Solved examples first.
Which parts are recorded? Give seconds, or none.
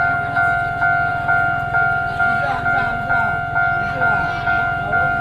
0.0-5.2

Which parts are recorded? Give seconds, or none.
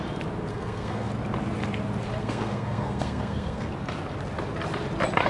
0.0-0.5; 1.1-2.2; 3.7-5.3